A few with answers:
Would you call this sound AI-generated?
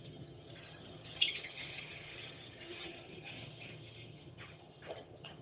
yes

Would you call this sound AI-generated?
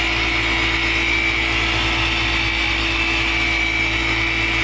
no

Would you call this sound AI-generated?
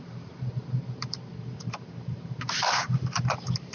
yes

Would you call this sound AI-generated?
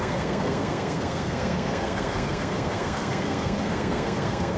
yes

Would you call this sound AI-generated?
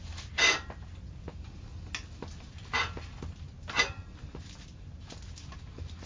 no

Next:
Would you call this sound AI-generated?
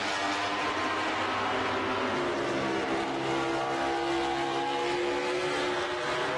no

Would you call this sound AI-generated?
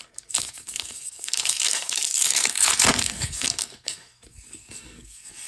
yes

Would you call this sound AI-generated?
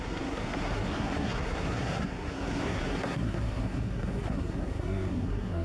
yes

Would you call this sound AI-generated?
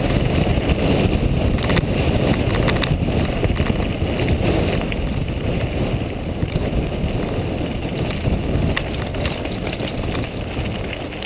no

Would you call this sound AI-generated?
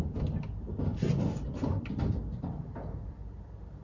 no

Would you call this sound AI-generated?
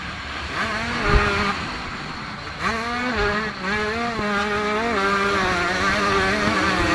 no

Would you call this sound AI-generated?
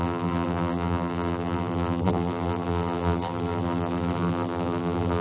yes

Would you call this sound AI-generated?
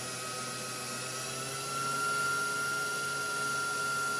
no